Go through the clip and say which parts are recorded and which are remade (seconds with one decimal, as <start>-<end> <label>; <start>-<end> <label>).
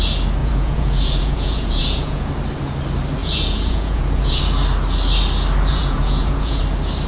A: 0.0-0.4 recorded; 0.4-2.3 remade; 2.3-3.2 recorded; 3.2-4.4 remade; 4.4-5.7 recorded; 5.7-6.6 remade; 6.6-7.1 recorded